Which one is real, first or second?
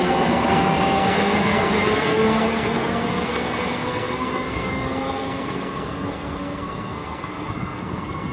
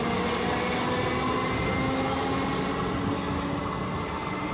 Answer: second